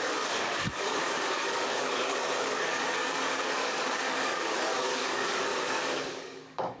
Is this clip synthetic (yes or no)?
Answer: yes